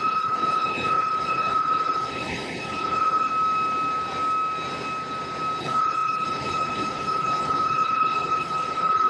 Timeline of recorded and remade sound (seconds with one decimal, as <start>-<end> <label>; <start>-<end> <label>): 0.0-3.3 remade; 3.3-5.6 recorded; 5.6-9.1 remade

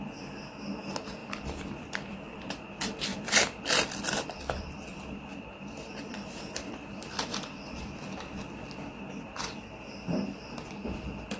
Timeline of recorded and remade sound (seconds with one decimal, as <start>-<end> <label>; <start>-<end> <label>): 0.0-1.2 recorded; 1.2-1.9 remade; 1.9-3.1 recorded; 3.1-7.8 remade; 7.8-11.4 recorded

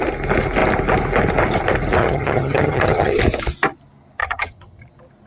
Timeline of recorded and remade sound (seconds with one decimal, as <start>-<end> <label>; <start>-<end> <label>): 0.0-2.0 recorded; 2.0-3.2 remade; 3.2-4.2 recorded; 4.2-4.8 remade; 4.8-5.3 recorded

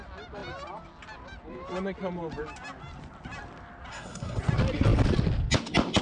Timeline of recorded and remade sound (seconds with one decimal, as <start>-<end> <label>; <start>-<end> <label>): 0.0-3.9 recorded; 3.9-4.4 remade; 4.4-6.0 recorded

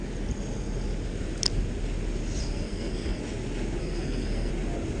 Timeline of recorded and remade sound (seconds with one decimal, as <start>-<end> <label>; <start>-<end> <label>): 0.0-2.4 recorded; 2.4-3.2 remade; 3.2-3.8 recorded; 3.8-4.5 remade; 4.5-5.0 recorded